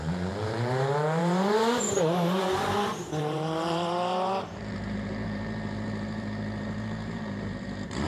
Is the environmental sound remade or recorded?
remade